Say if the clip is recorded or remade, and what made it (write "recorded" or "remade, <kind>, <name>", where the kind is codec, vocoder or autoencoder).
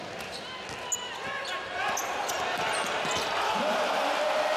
recorded